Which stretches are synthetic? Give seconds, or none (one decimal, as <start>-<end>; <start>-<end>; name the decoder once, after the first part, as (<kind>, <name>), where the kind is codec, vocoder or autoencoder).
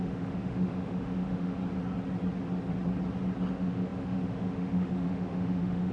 0.0-1.6 (autoencoder, DAC-VAE); 3.5-5.9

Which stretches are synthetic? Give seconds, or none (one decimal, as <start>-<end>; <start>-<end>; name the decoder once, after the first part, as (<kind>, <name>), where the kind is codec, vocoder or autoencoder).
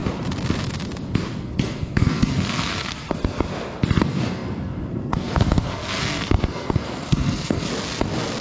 1.4-3.5 (codec, SNAC); 4.0-7.7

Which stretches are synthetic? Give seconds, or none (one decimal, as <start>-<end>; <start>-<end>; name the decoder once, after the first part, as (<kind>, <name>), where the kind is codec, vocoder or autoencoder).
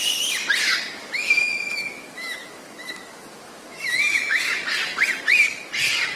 1.0-4.5 (autoencoder, DAC-VAE)